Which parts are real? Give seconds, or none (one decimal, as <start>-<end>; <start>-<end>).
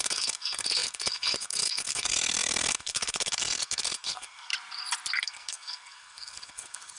4.5-5.2